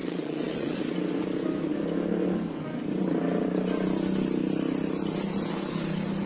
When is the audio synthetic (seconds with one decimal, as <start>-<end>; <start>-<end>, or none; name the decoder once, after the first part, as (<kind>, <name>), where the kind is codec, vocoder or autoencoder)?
0.0-0.8 (vocoder, Vocos)